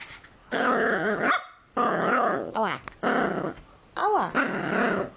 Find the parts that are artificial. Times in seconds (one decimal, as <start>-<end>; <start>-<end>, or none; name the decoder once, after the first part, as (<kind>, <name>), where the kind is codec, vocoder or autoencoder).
0.4-1.3 (codec, HILCodec); 1.8-2.8